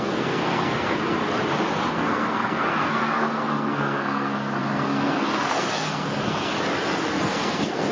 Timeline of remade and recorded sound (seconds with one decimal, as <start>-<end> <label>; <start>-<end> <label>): 0.0-1.2 remade; 1.2-1.9 recorded; 1.9-6.5 remade; 6.5-7.2 recorded; 7.2-7.9 remade